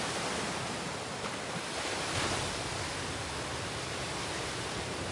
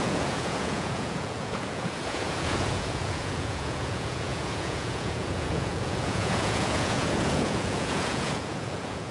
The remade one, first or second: second